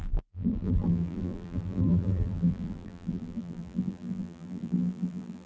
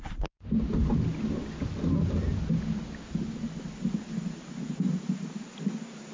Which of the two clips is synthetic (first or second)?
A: first